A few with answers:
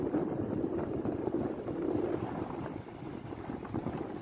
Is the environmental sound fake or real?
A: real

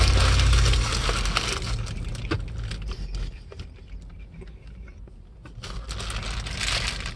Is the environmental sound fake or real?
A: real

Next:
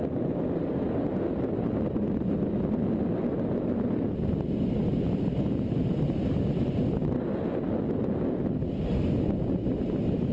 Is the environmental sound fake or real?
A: real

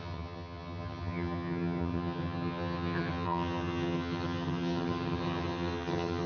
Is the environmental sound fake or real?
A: fake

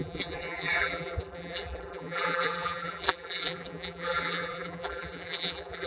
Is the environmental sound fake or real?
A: fake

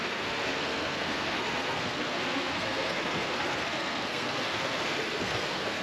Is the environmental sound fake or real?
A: fake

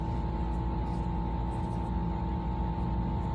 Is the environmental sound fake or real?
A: real